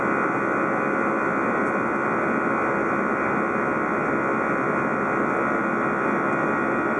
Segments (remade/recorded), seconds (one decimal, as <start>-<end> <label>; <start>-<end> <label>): 0.0-7.0 recorded